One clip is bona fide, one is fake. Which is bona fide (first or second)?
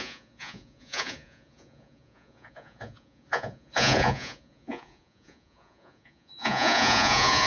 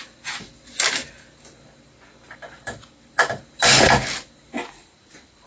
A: second